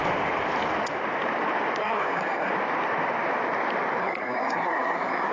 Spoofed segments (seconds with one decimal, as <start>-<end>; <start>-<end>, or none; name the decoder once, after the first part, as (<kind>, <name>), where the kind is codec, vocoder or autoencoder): 1.8-2.5 (codec, SNAC); 4.0-5.3